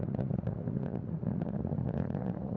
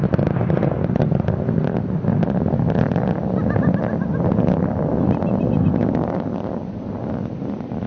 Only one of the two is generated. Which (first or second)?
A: first